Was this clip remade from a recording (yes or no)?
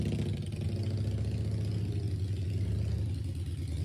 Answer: no